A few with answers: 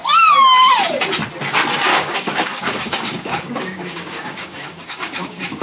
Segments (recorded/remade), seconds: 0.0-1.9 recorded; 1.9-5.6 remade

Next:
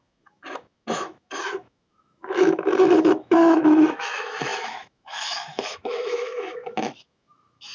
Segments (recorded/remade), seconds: 0.0-7.7 remade

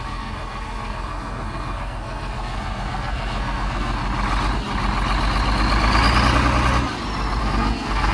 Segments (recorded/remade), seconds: 0.0-4.0 remade; 4.0-7.4 recorded; 7.4-8.1 remade

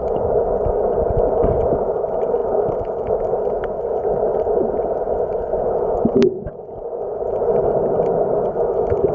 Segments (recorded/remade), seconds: 0.0-9.1 recorded

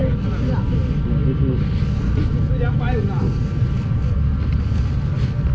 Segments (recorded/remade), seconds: 0.0-5.5 recorded

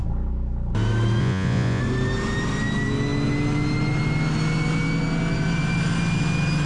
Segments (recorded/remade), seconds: 0.0-1.2 recorded; 1.2-1.8 remade; 1.8-6.7 recorded

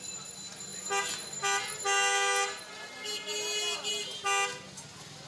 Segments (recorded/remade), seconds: 0.0-5.3 recorded